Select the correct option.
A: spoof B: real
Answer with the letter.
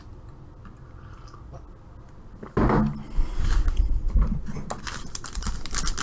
B